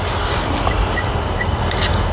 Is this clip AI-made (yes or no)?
no